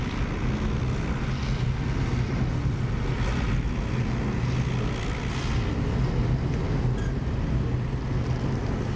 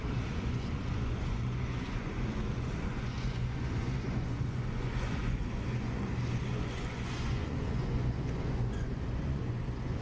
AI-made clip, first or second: second